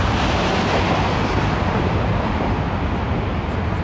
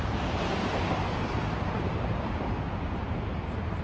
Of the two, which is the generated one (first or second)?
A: second